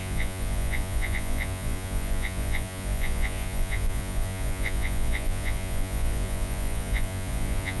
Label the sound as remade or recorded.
remade